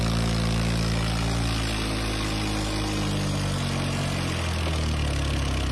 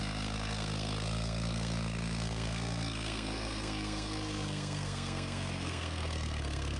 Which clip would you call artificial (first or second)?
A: second